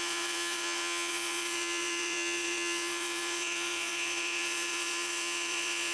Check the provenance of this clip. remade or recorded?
remade